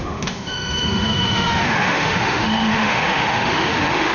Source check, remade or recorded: remade